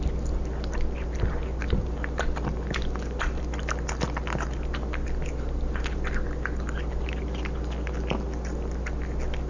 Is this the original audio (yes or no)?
yes